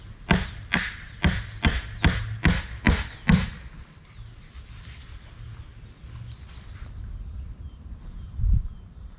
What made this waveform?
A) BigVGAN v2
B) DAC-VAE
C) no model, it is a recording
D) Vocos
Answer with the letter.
C